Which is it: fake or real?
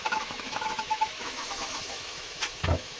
fake